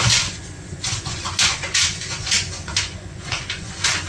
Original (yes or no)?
no